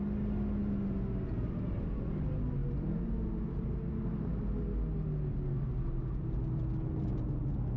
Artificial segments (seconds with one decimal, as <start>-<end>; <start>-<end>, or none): none